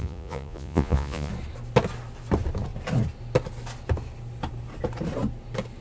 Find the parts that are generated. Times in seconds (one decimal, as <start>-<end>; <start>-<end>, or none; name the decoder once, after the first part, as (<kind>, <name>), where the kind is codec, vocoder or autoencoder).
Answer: 0.0-1.3 (vocoder, Vocos)

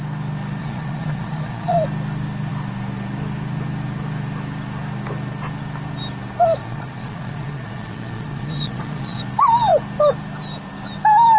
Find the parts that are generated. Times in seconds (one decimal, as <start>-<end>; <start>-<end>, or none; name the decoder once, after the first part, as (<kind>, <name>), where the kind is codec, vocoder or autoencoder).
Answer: 0.6-1.8 (vocoder, Vocos); 6.6-9.2

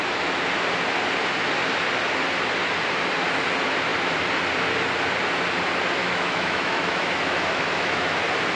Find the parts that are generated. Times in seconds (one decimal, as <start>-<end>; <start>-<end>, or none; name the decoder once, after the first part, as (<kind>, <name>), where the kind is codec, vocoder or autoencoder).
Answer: 6.0-8.2 (autoencoder, DAC-VAE)

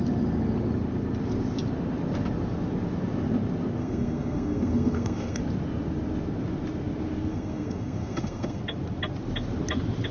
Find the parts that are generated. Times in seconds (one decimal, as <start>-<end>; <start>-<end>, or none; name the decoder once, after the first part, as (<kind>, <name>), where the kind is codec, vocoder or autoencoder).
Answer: 3.8-5.4 (codec, SNAC); 7.3-8.6